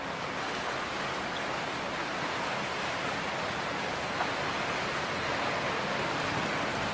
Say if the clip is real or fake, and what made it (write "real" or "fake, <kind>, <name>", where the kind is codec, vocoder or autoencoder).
real